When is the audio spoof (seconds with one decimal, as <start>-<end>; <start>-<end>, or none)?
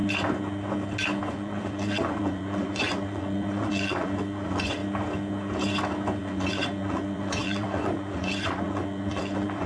1.3-4.8; 6.2-9.7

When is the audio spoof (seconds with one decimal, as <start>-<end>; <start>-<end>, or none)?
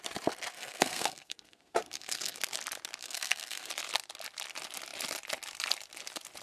0.5-2.4; 3.0-3.7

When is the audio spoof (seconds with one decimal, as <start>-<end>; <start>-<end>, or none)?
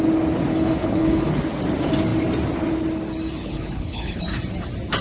0.5-1.4; 3.4-4.2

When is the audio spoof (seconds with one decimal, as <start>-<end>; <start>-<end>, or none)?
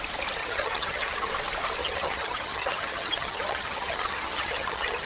0.4-1.3; 1.8-5.1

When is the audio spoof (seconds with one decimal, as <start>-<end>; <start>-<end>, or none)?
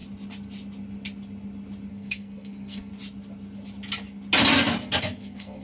1.9-2.9; 5.0-5.6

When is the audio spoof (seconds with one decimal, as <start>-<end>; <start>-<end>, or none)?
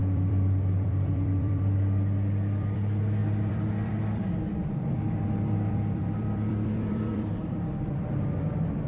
0.0-8.9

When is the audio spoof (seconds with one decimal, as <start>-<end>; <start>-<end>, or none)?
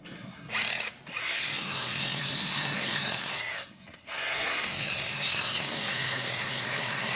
0.0-0.5; 1.2-7.2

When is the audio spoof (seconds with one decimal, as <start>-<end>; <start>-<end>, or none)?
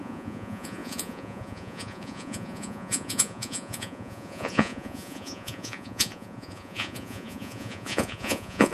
0.0-8.7